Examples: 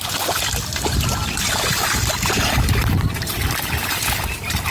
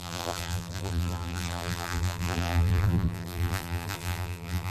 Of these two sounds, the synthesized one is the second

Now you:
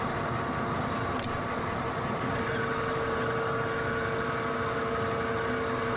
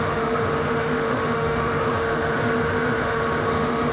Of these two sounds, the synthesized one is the second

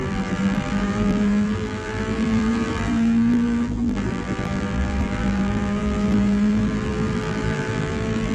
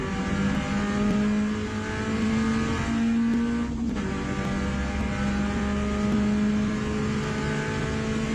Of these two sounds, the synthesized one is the first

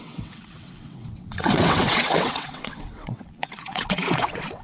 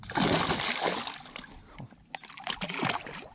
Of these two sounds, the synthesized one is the first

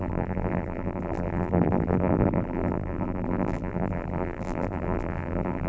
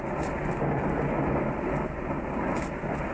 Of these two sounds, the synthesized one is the first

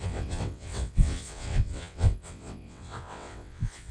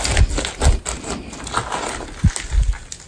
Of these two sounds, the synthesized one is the first